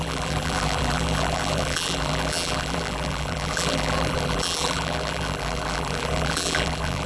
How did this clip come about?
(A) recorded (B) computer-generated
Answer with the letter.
B